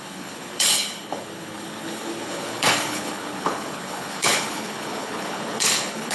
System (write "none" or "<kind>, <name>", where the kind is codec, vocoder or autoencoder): codec, HILCodec